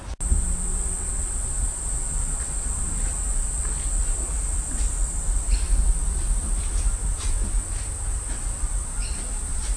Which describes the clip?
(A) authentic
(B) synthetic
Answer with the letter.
A